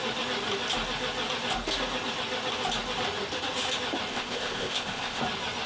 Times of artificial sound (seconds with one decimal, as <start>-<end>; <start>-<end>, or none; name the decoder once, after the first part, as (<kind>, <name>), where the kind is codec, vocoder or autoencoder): 4.1-5.2 (codec, ZipCodec)